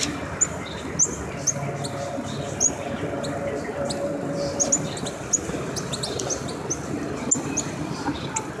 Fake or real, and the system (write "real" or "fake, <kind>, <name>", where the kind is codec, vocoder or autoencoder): real